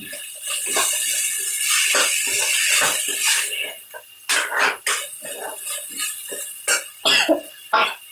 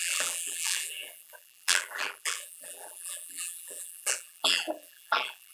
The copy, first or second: second